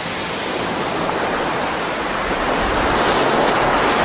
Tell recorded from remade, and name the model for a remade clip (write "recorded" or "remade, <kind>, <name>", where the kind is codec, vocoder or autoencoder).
recorded